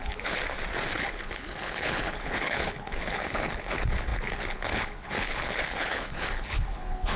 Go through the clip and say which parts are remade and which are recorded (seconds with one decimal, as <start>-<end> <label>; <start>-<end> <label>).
0.0-0.4 remade; 0.4-1.0 recorded; 1.0-7.2 remade